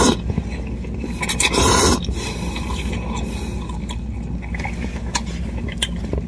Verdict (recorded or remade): recorded